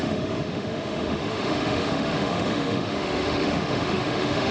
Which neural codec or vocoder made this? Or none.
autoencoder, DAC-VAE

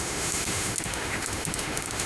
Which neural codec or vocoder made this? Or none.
autoencoder, DAC-VAE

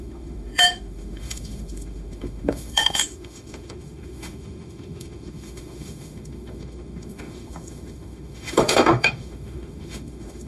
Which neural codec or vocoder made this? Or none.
autoencoder, DAC-VAE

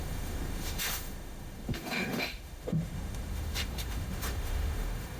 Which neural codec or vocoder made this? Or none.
autoencoder, DAC-VAE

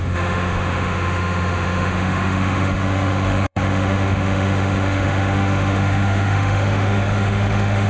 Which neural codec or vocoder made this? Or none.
autoencoder, DAC-VAE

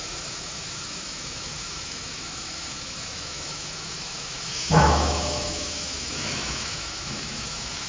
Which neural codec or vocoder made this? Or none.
autoencoder, DAC-VAE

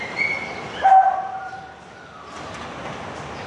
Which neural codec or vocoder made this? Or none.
none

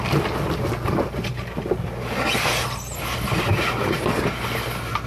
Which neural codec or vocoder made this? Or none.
none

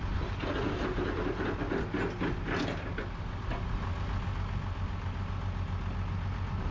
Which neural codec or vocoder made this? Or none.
none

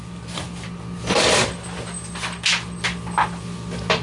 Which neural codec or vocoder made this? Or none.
none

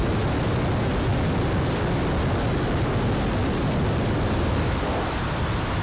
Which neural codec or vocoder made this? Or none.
none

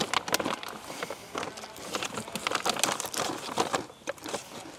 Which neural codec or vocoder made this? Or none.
none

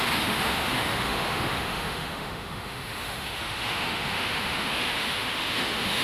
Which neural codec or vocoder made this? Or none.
autoencoder, DAC-VAE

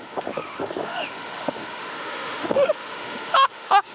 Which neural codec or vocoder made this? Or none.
autoencoder, DAC-VAE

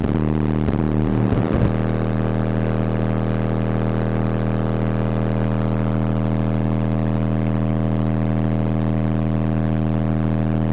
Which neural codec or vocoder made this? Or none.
none